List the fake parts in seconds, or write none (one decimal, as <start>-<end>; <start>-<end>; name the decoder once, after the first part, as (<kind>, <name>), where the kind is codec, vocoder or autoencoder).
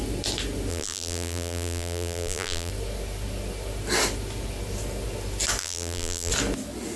0.7-2.7 (vocoder, BigVGAN v2); 5.6-6.3